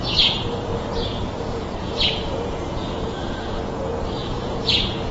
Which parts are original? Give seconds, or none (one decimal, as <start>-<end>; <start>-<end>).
0.0-0.7; 3.8-4.2